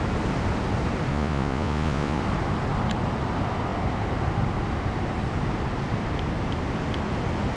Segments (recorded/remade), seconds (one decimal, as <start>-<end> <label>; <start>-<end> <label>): 0.0-1.1 recorded; 1.1-2.2 remade; 2.2-7.6 recorded